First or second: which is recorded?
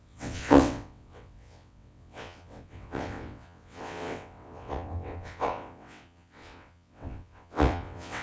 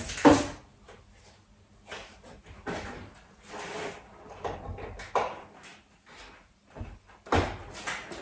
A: second